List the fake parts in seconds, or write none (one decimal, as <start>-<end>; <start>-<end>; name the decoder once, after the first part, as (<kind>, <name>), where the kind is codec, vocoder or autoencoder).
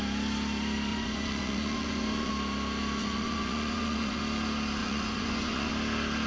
0.9-2.3 (vocoder, Vocos); 3.0-4.2; 4.8-5.7